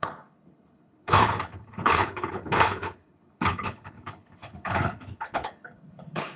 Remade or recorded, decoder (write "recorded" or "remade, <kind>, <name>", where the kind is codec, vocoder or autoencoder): remade, codec, HILCodec